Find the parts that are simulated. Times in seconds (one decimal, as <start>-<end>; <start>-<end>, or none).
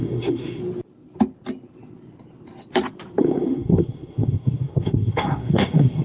0.0-0.6; 3.2-6.0